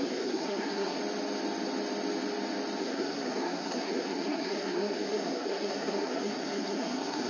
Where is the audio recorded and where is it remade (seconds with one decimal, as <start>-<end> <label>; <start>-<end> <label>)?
0.0-1.0 remade; 1.0-2.8 recorded; 2.8-7.3 remade